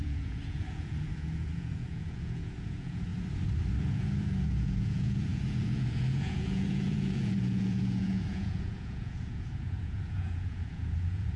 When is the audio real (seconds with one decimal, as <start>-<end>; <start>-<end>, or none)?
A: 3.1-3.8